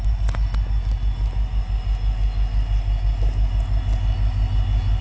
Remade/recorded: recorded